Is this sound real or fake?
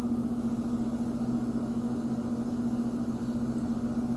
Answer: real